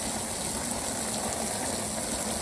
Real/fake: real